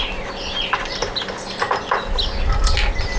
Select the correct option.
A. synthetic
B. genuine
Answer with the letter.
B